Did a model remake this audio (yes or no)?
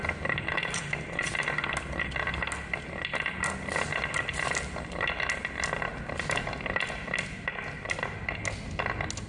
no